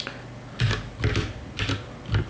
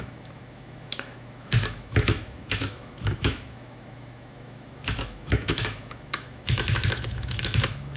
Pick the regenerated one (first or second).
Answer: second